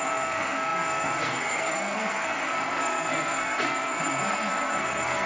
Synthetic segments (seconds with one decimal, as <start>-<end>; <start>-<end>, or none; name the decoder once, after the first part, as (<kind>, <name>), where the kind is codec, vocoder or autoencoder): 0.0-5.3 (codec, SNAC)